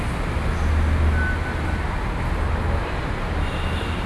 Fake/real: real